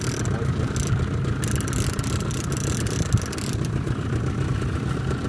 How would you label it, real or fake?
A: real